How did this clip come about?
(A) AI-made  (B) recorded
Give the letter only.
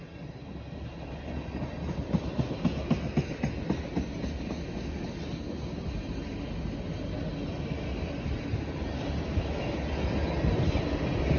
B